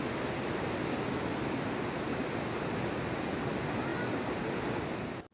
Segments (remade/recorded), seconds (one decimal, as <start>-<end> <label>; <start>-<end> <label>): 0.0-5.3 recorded